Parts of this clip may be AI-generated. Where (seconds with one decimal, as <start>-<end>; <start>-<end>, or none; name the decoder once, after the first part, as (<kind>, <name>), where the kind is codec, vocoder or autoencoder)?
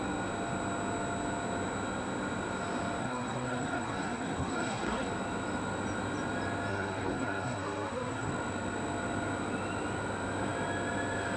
3.0-5.1 (codec, SNAC); 6.7-8.3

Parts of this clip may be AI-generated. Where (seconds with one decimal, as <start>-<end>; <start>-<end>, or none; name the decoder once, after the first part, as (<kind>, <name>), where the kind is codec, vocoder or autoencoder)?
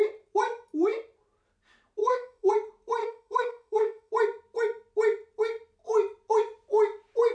2.0-2.5 (autoencoder, DAC-VAE); 3.0-4.1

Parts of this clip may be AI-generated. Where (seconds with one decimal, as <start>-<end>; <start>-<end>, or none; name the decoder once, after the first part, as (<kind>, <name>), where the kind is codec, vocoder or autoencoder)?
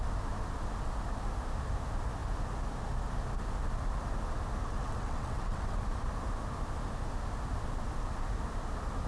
4.8-5.8 (vocoder, WaveNeXt)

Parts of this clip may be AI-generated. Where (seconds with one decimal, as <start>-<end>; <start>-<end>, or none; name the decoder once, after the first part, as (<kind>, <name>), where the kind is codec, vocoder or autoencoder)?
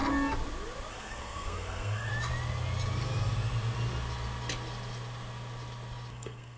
0.9-2.1 (codec, SNAC); 6.1-6.6